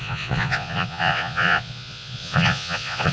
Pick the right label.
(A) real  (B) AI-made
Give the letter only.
B